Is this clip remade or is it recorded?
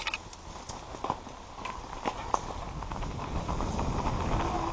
recorded